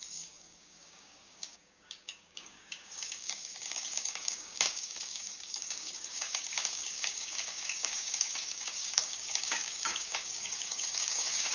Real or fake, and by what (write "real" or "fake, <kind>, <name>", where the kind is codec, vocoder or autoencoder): fake, codec, DAC